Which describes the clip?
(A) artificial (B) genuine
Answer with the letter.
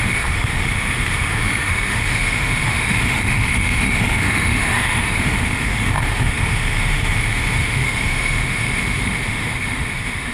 A